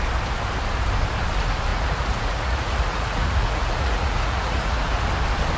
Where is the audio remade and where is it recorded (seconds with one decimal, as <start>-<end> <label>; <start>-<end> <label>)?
0.0-1.7 recorded; 1.7-5.1 remade; 5.1-5.6 recorded